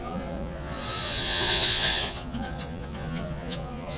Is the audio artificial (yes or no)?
yes